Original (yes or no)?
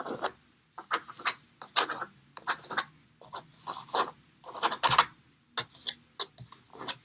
yes